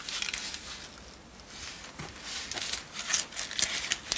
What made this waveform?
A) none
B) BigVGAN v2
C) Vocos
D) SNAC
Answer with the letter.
A